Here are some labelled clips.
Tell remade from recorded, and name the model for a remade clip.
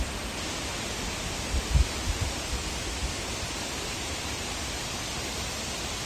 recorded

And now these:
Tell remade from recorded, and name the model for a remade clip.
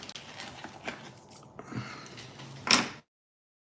recorded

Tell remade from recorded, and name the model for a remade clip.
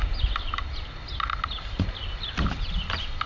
recorded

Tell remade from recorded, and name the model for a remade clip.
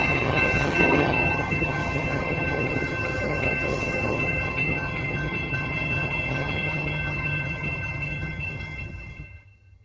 remade, vocoder, HiFi-GAN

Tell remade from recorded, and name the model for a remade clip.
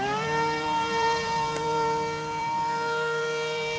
remade, vocoder, BigVGAN v2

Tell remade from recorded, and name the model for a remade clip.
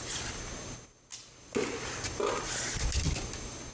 recorded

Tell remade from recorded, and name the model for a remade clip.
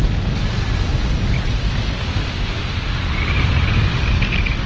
recorded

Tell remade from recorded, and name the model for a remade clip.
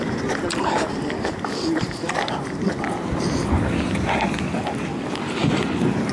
recorded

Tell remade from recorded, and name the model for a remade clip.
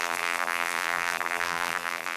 remade, vocoder, BigVGAN v2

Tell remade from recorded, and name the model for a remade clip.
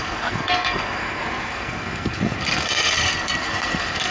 remade, codec, SNAC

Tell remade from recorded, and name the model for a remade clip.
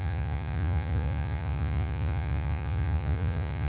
remade, vocoder, Vocos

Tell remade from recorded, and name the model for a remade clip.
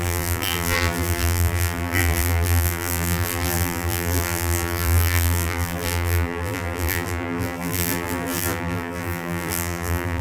remade, vocoder, BigVGAN v2